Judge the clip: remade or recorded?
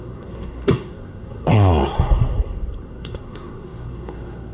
remade